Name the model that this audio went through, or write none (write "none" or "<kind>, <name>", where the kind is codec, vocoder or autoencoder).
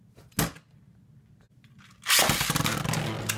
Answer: none